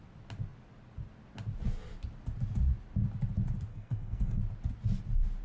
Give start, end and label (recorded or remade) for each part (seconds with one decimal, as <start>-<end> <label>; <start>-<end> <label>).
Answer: 0.0-3.7 recorded; 3.7-4.4 remade; 4.4-5.4 recorded